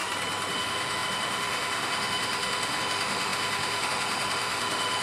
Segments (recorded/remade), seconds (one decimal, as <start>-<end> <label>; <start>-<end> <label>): 0.0-0.5 recorded; 0.5-5.0 remade